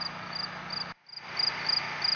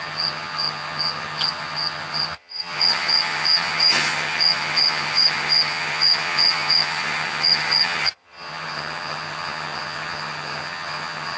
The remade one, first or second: second